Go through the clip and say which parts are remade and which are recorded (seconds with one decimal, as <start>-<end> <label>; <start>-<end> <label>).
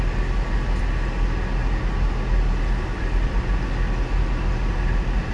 0.0-2.9 recorded; 2.9-3.4 remade; 3.4-5.3 recorded